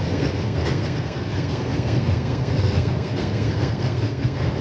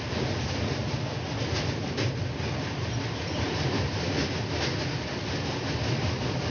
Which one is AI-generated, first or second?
first